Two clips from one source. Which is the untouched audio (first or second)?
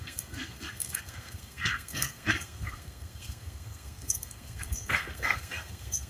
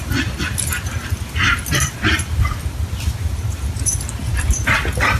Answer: second